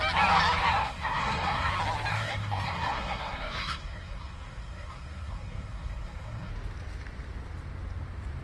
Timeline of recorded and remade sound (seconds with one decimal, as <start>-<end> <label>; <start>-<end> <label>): 0.0-0.7 recorded; 0.7-1.7 remade; 1.7-2.1 recorded; 2.1-6.5 remade; 6.5-8.4 recorded